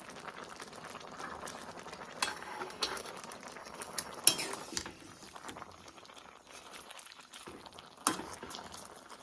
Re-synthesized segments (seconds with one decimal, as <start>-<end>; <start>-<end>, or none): 2.3-3.1; 3.6-4.2